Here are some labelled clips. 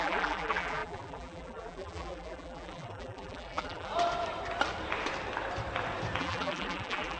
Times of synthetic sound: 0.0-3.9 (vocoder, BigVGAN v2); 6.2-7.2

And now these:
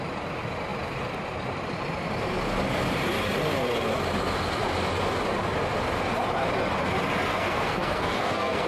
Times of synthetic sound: 7.3-8.7 (codec, SNAC)

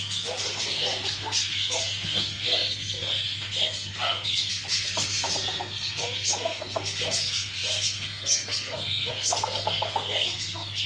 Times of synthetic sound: 0.0-10.9 (codec, SNAC)

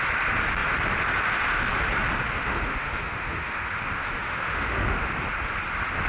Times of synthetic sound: 2.4-5.1 (autoencoder, DAC-VAE)

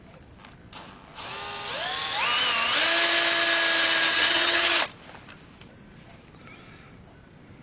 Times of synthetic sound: 4.1-4.8 (vocoder, HiFi-GAN)